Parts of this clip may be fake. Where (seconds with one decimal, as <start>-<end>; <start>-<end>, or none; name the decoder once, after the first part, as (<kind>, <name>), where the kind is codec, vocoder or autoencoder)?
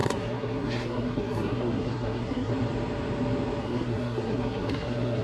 0.0-2.5 (codec, SNAC); 3.6-5.2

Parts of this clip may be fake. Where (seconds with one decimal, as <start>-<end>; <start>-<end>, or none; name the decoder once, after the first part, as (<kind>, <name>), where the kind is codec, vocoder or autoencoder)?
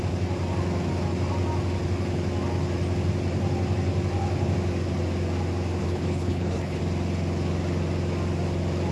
5.8-6.8 (codec, HILCodec)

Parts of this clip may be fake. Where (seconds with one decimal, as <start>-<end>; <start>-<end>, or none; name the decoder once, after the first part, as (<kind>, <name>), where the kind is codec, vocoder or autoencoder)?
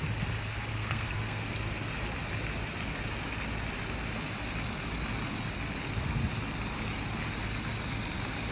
0.7-1.5 (codec, SNAC)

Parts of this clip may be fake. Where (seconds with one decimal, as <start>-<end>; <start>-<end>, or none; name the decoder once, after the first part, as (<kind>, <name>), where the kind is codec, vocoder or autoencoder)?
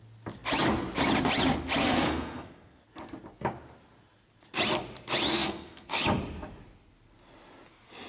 1.8-2.8 (codec, SNAC); 5.3-6.0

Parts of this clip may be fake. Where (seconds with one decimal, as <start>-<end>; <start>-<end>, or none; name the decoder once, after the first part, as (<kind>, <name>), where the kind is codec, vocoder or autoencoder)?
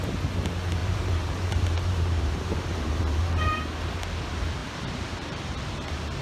0.8-3.9 (vocoder, BigVGAN v2); 4.6-6.2